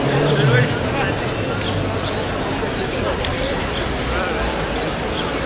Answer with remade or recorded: recorded